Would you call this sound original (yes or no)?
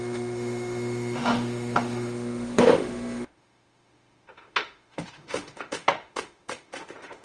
no